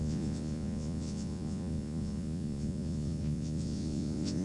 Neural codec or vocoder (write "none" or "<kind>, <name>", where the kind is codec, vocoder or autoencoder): vocoder, Vocos